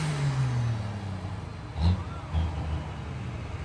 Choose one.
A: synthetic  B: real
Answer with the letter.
B